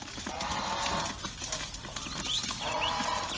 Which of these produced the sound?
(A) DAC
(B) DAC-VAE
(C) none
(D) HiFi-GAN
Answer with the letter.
C